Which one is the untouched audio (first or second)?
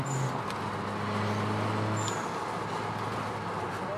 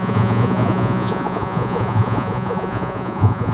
first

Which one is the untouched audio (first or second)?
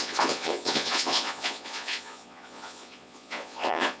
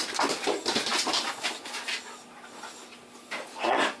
second